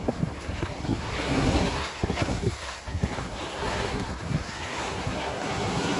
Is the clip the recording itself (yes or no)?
no